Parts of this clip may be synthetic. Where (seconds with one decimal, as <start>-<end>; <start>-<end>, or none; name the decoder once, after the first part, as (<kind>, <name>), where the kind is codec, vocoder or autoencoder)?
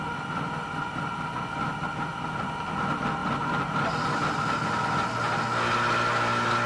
none